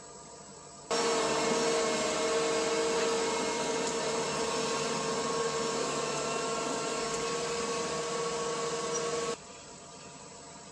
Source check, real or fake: real